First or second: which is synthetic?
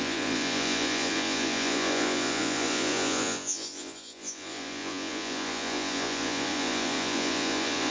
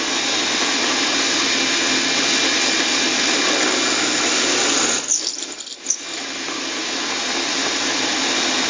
first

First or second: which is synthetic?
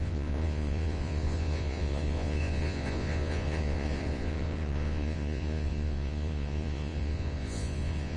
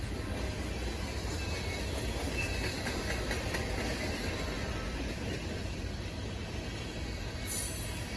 first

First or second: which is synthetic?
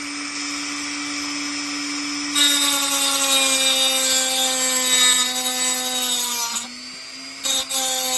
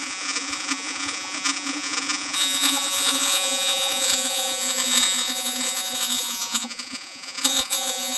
second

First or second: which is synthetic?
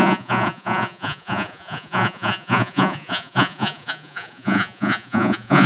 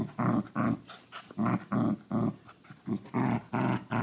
first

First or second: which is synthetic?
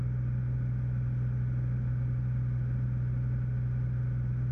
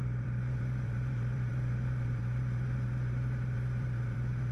second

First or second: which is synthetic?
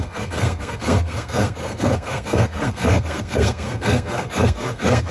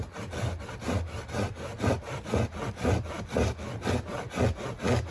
first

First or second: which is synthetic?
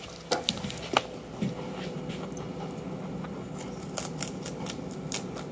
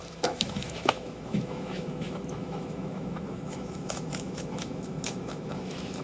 second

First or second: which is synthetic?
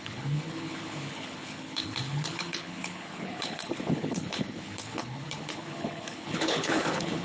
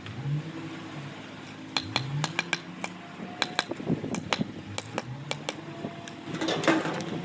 first